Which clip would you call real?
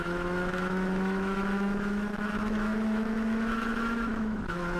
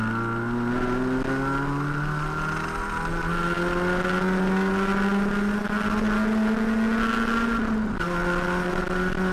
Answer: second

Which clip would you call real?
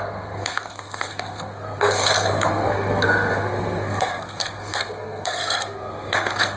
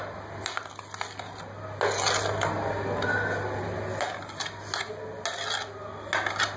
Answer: second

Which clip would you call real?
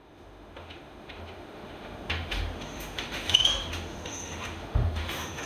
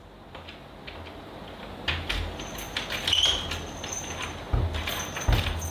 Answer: second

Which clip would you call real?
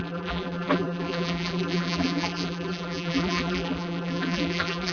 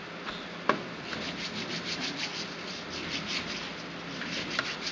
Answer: second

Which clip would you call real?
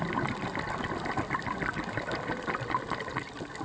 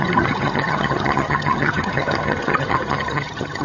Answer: first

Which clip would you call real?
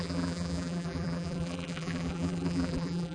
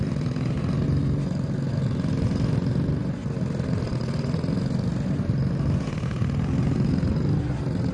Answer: second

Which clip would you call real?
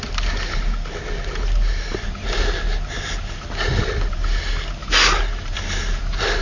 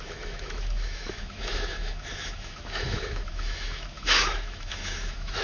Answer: first